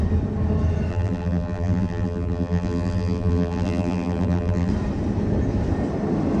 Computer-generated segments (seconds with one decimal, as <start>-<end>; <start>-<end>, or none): 0.9-4.7